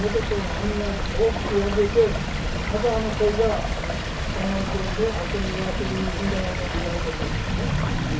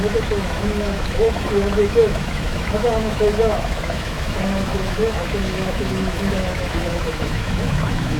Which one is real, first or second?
first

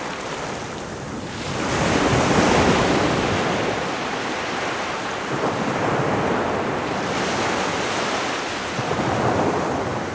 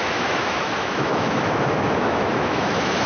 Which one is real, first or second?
first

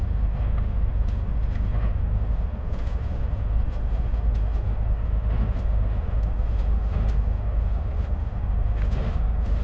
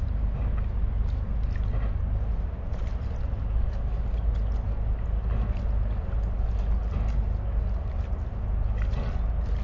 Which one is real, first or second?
second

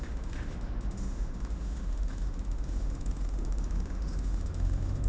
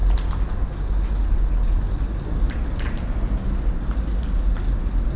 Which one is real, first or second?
second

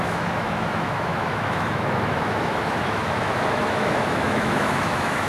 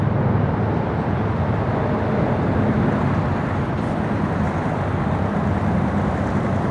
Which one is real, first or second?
second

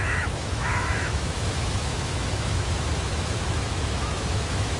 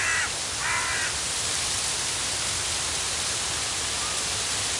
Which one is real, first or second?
second